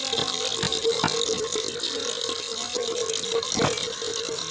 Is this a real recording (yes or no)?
yes